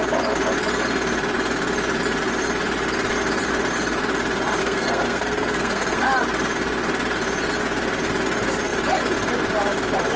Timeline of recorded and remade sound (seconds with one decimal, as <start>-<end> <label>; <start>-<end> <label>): 0.0-4.6 recorded; 4.6-6.0 remade; 6.0-10.2 recorded